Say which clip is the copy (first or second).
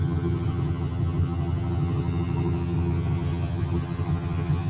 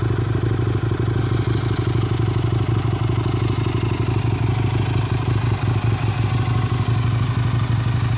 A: first